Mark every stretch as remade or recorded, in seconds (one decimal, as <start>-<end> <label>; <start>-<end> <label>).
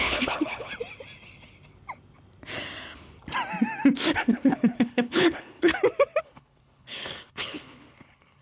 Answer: 0.0-0.7 remade; 0.7-4.2 recorded; 4.2-5.7 remade; 5.7-6.2 recorded; 6.2-8.4 remade